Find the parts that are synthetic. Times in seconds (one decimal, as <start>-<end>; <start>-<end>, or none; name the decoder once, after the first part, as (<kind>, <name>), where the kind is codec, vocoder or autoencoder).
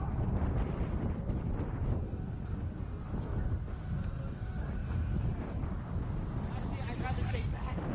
0.4-2.0 (vocoder, BigVGAN v2)